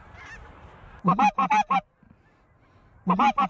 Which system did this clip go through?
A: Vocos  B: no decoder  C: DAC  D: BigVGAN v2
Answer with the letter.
B